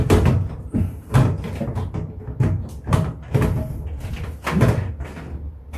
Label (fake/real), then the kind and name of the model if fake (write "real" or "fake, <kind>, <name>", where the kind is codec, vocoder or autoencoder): real